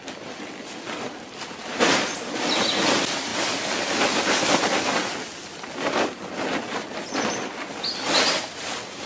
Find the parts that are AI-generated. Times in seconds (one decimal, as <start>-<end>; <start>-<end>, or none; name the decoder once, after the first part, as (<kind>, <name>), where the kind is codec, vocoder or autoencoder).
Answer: none